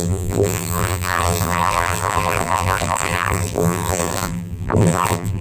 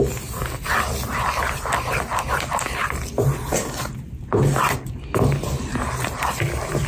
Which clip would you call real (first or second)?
second